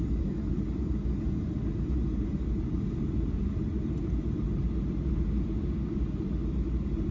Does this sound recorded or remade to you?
recorded